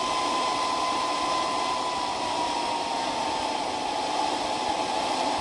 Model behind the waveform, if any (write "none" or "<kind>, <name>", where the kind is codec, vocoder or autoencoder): none